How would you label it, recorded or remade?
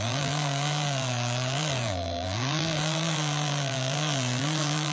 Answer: remade